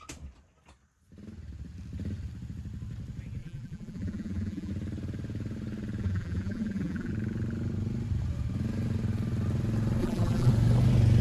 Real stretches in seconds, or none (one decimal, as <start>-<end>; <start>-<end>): 0.0-3.4; 4.7-6.0; 7.1-10.0; 10.5-11.2